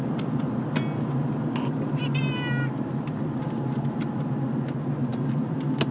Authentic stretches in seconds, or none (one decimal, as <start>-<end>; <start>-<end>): 0.0-5.1